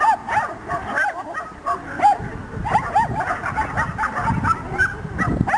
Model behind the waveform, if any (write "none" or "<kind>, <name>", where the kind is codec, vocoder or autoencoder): none